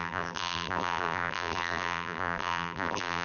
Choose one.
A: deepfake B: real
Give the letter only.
A